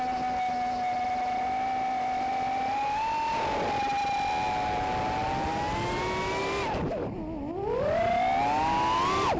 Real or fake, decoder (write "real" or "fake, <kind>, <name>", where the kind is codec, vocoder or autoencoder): real